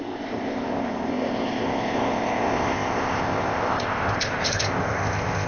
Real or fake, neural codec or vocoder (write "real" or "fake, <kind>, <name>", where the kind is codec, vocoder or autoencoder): fake, codec, ZipCodec